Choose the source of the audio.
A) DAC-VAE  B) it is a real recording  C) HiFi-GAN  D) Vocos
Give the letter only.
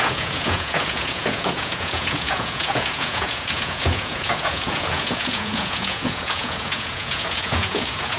D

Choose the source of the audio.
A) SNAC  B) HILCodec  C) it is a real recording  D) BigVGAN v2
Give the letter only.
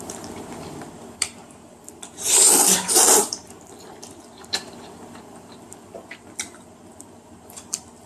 D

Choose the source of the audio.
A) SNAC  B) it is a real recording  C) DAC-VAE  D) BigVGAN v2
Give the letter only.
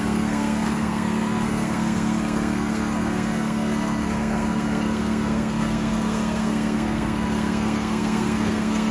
A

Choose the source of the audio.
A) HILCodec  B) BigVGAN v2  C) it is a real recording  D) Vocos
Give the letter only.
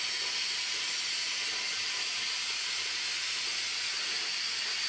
C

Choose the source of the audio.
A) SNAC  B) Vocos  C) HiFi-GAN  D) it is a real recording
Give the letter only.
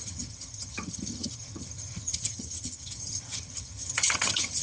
C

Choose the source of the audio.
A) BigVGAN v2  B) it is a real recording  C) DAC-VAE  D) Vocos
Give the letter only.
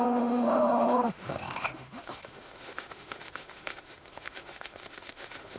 C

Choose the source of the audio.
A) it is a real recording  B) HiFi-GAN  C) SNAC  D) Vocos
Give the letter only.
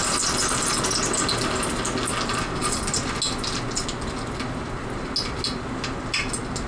A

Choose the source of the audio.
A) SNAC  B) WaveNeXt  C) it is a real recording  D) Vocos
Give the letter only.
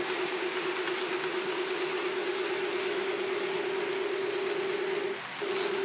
C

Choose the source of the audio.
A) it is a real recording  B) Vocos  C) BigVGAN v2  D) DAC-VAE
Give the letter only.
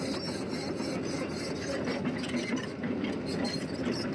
A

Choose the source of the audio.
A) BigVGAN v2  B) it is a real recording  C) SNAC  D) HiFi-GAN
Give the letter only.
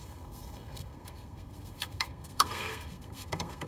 C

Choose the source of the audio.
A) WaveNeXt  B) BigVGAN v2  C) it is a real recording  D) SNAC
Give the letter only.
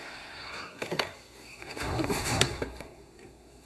D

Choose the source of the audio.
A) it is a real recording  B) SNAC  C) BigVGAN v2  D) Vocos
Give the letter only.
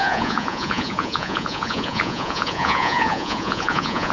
D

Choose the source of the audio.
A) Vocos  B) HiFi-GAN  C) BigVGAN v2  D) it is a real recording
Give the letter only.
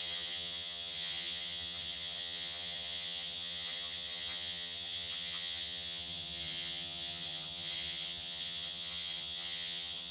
B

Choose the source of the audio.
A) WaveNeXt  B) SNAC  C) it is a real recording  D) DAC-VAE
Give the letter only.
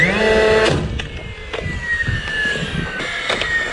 C